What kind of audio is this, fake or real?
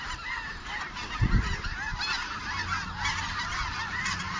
real